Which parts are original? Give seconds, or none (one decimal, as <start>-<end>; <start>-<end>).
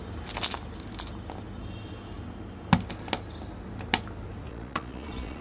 0.0-4.5